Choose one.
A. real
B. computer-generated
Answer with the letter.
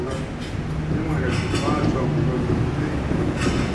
A